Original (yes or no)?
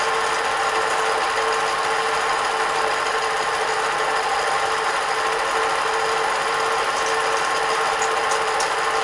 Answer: yes